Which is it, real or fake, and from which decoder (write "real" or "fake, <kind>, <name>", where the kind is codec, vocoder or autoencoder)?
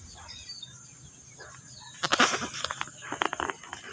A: fake, vocoder, BigVGAN v2